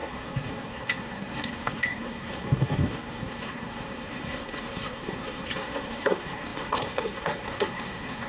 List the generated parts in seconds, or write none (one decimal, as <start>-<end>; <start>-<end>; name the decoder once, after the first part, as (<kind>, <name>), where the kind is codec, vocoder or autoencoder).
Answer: 0.0-8.3 (codec, SNAC)